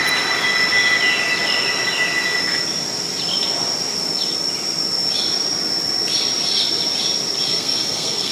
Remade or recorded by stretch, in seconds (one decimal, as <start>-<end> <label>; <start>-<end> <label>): 0.0-7.5 recorded; 7.5-8.3 remade